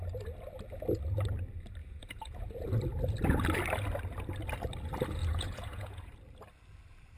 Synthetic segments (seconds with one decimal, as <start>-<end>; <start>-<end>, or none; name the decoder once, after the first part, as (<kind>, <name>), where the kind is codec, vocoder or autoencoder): 1.8-2.8 (vocoder, Vocos); 5.2-6.1